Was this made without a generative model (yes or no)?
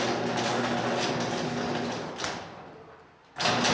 yes